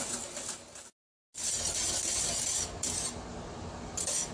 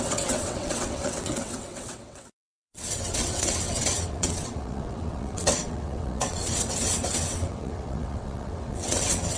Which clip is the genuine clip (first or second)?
first